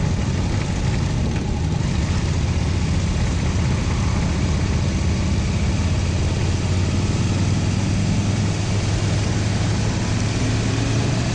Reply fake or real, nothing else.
real